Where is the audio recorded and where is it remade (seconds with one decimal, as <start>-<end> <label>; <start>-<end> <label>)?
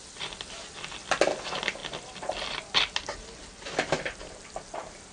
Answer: 0.0-5.1 recorded